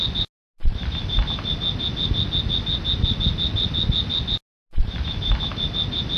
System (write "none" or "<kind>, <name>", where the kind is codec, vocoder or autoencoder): none